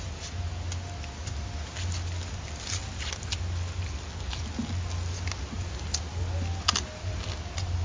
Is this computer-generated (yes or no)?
no